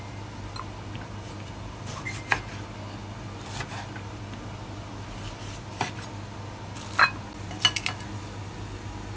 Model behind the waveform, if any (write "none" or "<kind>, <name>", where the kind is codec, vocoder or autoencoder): none